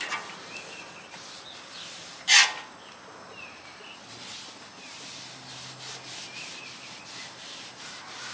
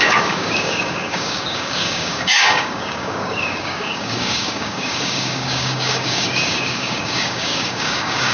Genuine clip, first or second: first